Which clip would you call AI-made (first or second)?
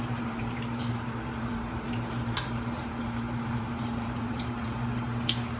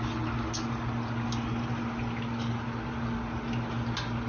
first